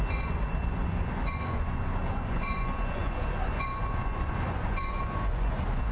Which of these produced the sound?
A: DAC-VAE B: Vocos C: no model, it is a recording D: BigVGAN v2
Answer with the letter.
B